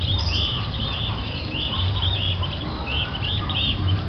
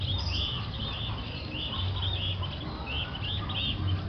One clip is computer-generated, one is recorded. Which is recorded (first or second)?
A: second